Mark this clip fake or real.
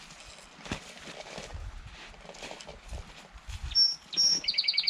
real